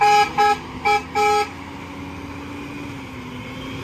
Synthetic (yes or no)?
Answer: no